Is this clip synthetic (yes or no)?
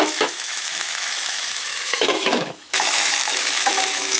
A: yes